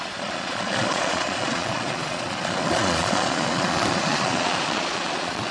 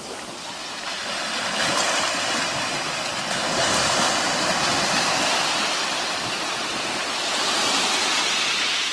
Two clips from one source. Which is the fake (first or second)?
first